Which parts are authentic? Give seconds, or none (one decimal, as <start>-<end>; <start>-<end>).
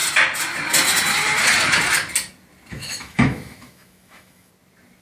0.0-2.7; 4.5-5.0